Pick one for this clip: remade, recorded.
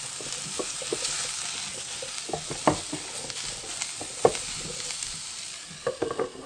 recorded